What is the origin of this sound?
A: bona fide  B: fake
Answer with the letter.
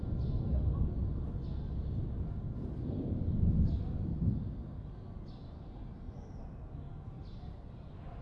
A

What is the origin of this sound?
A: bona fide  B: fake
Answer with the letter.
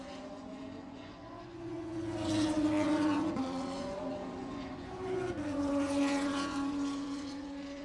B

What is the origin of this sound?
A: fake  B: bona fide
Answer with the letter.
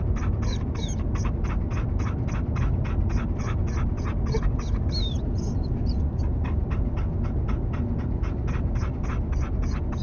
B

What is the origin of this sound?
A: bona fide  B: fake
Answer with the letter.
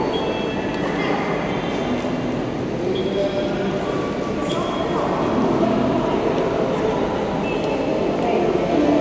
A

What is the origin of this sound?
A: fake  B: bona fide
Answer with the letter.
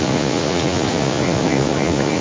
A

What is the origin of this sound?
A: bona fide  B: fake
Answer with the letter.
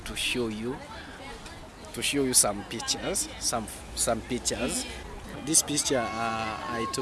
A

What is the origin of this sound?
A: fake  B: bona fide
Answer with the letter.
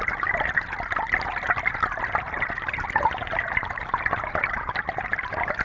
B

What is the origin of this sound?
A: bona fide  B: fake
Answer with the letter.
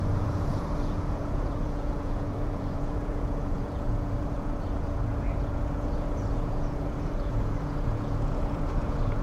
B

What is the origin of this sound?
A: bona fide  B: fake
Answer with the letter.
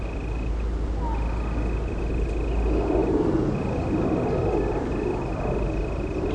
A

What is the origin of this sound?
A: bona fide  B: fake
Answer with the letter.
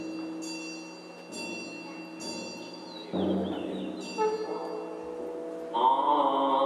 A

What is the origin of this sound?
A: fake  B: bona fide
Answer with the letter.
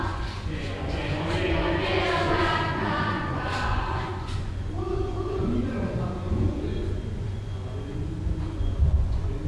A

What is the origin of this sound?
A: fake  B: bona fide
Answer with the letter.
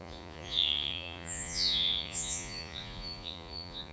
A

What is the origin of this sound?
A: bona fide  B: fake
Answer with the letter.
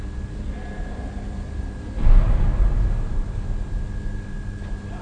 A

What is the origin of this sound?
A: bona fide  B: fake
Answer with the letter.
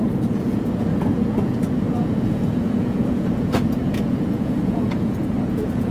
B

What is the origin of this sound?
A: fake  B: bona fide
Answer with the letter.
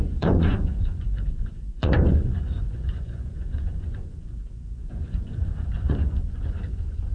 A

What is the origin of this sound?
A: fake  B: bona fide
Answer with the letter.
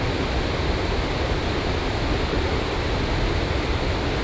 B